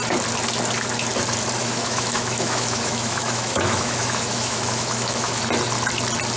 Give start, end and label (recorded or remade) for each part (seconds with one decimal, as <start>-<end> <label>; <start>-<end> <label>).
0.0-1.6 recorded; 1.6-5.4 remade; 5.4-6.4 recorded